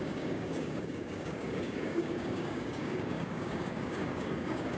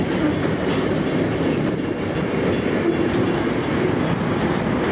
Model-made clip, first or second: first